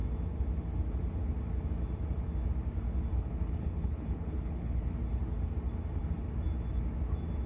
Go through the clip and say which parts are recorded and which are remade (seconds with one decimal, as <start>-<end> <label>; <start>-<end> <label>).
0.0-3.1 recorded; 3.1-5.0 remade; 5.0-7.5 recorded